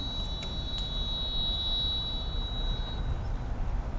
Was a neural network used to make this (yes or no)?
no